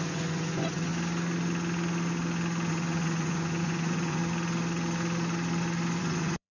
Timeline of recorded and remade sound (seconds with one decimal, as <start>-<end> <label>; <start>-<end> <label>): 0.0-0.9 remade; 0.9-2.7 recorded; 2.7-4.2 remade; 4.2-6.0 recorded; 6.0-6.5 remade